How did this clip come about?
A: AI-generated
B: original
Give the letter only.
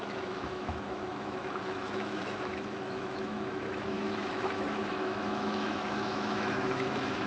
A